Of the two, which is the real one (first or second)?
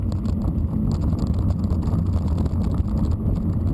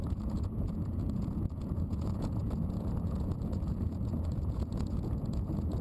first